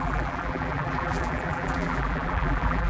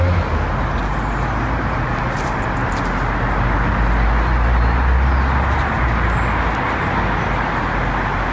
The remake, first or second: first